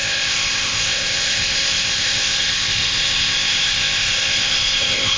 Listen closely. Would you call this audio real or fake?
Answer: fake